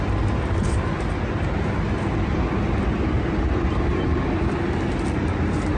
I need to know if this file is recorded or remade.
recorded